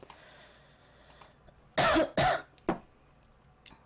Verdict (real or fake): real